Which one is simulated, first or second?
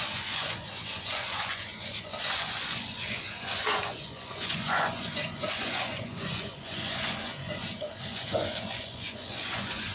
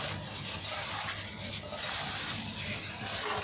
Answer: first